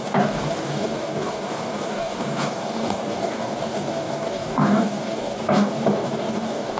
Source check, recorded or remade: remade